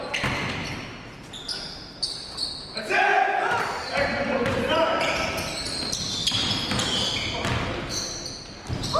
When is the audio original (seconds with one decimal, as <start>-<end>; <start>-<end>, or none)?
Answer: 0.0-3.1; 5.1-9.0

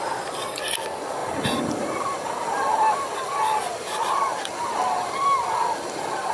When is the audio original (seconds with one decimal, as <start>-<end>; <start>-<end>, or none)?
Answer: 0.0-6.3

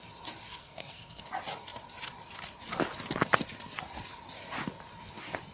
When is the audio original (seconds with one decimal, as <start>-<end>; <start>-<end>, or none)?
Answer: 0.0-0.6; 1.2-5.5

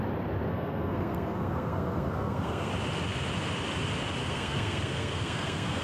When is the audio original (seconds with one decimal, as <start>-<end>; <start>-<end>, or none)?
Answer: 0.0-0.5; 2.7-4.2